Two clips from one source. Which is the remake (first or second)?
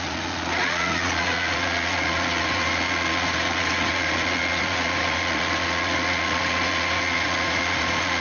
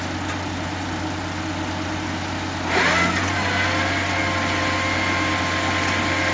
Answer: first